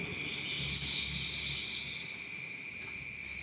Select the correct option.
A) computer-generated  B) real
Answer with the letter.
B